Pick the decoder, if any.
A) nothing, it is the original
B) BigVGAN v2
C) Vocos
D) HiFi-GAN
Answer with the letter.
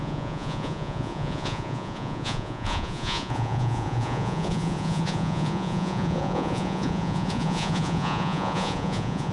C